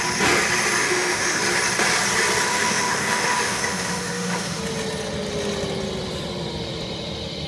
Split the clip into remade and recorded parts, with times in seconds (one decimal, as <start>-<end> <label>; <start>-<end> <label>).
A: 0.0-0.8 recorded; 0.8-1.4 remade; 1.4-2.5 recorded; 2.5-4.6 remade; 4.6-7.5 recorded